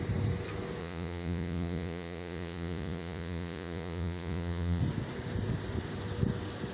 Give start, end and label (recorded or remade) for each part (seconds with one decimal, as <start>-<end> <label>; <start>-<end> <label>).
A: 0.0-0.8 recorded; 0.8-4.8 remade; 4.8-6.7 recorded